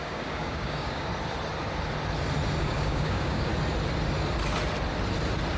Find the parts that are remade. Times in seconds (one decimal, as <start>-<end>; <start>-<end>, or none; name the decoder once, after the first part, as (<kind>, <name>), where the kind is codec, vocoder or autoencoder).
0.0-1.1 (codec, DAC); 2.6-3.5